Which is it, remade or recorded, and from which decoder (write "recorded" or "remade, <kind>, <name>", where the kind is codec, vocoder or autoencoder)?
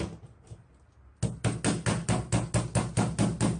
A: recorded